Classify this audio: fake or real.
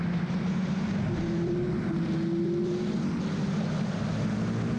real